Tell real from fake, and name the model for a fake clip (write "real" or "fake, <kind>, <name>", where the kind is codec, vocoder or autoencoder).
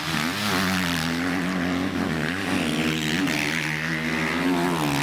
real